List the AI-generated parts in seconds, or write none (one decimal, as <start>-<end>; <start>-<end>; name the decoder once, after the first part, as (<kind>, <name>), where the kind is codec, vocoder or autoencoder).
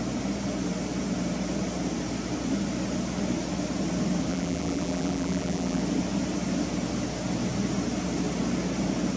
4.3-5.8 (vocoder, BigVGAN v2)